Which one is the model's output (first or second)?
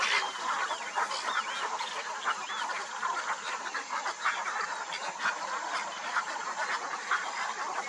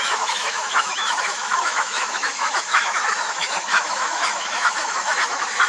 second